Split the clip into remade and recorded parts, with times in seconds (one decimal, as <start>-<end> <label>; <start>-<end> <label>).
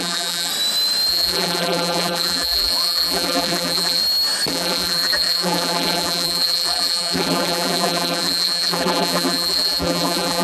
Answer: 0.0-0.5 remade; 0.5-1.1 recorded; 1.1-4.0 remade; 4.0-4.5 recorded; 4.5-10.4 remade